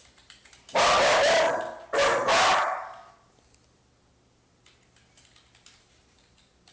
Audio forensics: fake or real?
real